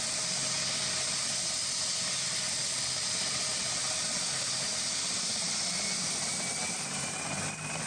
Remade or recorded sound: remade